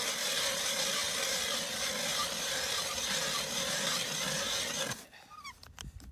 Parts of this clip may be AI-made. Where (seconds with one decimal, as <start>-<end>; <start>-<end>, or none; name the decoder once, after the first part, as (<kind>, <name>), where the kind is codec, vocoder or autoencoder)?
none